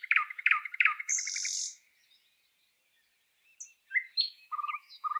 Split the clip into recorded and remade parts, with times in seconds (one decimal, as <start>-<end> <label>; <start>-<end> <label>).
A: 0.0-1.1 remade; 1.1-4.2 recorded; 4.2-5.2 remade